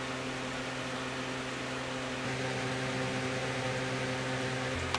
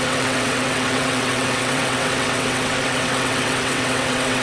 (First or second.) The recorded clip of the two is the first